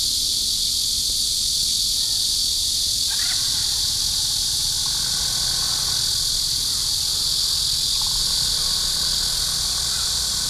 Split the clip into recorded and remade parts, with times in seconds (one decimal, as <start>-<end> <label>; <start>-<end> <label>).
0.0-10.5 recorded